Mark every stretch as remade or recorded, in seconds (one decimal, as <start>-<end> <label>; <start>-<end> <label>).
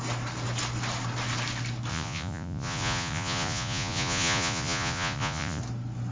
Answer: 0.0-1.9 recorded; 1.9-5.6 remade; 5.6-6.1 recorded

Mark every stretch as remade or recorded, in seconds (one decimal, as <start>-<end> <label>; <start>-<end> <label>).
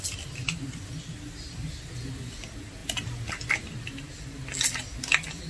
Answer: 0.0-5.5 recorded